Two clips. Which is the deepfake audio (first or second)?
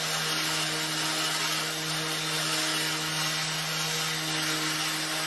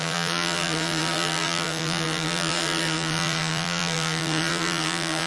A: second